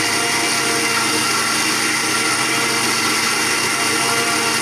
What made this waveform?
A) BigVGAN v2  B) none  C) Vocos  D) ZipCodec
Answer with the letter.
B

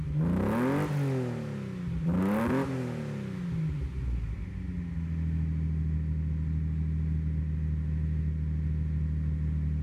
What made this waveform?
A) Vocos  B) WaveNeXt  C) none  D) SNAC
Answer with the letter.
C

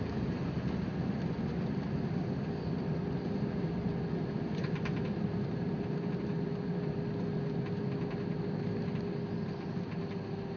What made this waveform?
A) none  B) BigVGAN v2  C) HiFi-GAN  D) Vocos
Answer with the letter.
A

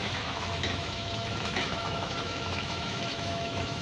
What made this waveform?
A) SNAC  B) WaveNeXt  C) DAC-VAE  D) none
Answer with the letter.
C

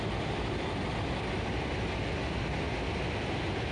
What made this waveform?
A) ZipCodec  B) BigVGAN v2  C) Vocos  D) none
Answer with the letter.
D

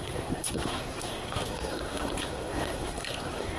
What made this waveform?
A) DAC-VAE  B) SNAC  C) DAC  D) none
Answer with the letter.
B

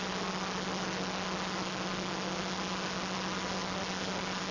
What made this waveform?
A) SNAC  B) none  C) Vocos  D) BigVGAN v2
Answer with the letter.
B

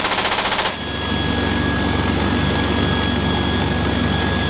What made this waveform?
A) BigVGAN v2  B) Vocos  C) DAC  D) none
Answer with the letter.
D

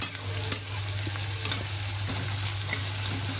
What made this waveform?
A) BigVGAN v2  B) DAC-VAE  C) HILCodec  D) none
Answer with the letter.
D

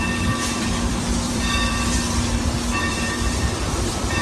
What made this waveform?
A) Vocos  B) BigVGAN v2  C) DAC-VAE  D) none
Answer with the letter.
B